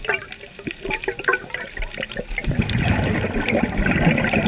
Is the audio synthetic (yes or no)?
no